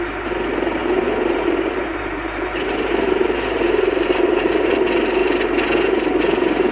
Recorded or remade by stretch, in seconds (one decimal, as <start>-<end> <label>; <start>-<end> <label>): 0.0-0.8 recorded; 0.8-4.8 remade; 4.8-6.7 recorded